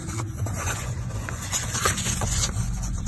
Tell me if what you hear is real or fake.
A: fake